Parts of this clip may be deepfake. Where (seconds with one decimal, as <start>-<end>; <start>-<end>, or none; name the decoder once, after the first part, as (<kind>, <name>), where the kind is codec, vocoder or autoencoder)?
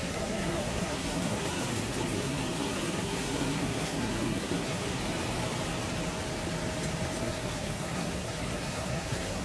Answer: 0.0-5.0 (codec, SNAC); 7.2-9.4